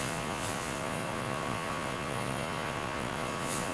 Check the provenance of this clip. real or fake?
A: fake